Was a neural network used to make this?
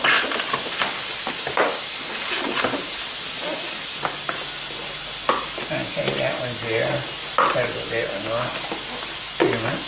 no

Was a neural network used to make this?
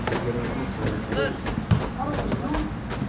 no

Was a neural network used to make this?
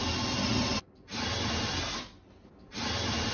no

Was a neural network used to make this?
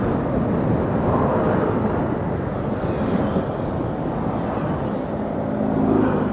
no